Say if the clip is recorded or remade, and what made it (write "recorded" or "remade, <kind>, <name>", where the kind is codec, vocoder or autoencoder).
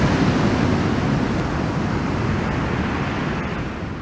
recorded